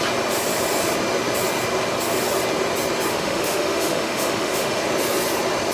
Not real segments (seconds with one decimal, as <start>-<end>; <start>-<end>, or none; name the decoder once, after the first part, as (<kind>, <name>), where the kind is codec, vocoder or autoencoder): 3.1-4.8 (autoencoder, DAC-VAE)